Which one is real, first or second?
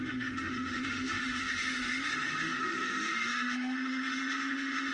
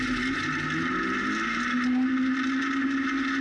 second